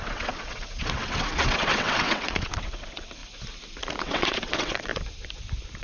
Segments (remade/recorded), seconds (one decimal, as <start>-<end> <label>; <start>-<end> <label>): 0.0-3.2 remade; 3.2-4.0 recorded; 4.0-4.9 remade; 4.9-5.8 recorded